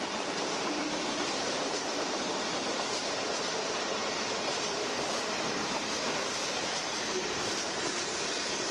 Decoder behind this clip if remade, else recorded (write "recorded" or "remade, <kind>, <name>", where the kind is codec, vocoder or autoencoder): remade, vocoder, BigVGAN v2